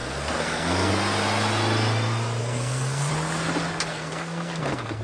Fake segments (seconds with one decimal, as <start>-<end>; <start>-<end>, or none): 0.0-0.9; 2.4-3.1; 3.9-5.0